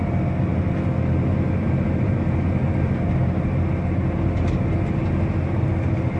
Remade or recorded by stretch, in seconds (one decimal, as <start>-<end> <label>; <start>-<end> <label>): 0.0-6.2 recorded